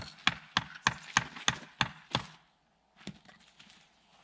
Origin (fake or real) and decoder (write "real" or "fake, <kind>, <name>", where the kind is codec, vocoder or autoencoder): real